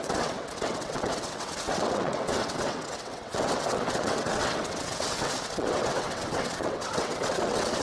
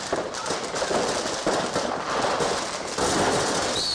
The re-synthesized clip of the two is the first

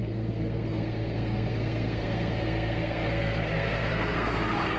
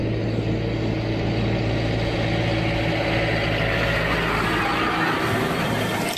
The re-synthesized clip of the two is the first